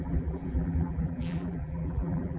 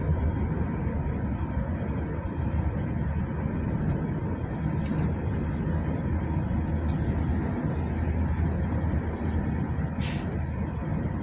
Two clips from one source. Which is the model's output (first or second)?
first